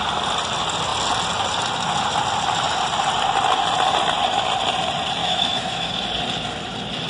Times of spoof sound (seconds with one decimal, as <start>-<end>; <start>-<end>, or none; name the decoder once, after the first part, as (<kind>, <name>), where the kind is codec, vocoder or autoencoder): 5.2-5.9 (autoencoder, DAC-VAE)